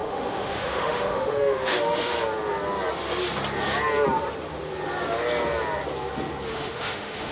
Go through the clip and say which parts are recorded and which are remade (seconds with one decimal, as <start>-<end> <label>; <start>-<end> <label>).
0.0-2.1 remade; 2.1-6.5 recorded; 6.5-7.3 remade

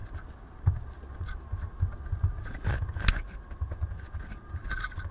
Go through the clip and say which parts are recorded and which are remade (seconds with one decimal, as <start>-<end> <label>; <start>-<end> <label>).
0.0-5.1 recorded

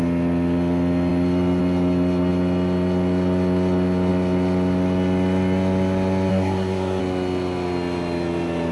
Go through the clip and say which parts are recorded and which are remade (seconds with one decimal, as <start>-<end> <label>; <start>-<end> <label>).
0.0-6.3 recorded; 6.3-7.0 remade; 7.0-8.7 recorded